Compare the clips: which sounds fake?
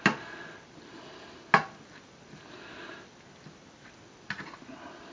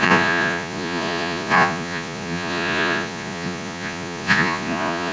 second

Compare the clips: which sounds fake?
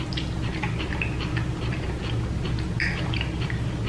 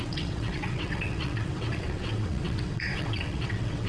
second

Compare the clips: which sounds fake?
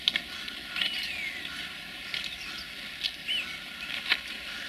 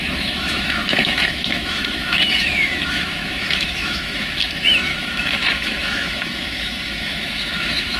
second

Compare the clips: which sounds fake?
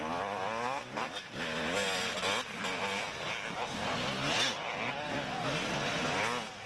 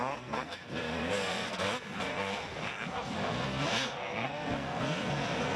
second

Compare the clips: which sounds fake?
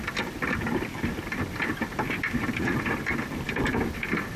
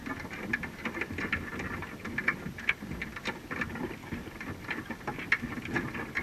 first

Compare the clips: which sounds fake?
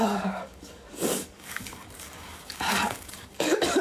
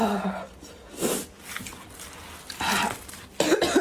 first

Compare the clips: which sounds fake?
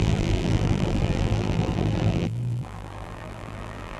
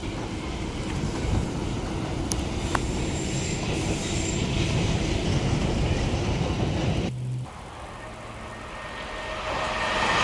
first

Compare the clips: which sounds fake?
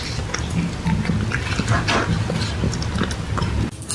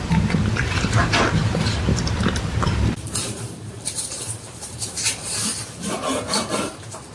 second